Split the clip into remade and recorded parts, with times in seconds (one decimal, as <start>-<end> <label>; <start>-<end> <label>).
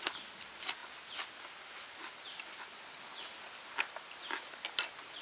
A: 0.0-5.2 recorded